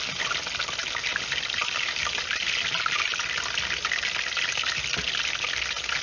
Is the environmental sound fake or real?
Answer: real